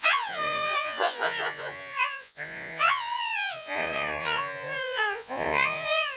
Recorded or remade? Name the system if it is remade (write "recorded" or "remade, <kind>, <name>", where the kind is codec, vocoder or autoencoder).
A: remade, vocoder, Vocos